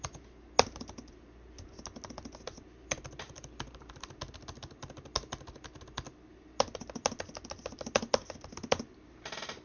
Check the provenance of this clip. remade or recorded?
recorded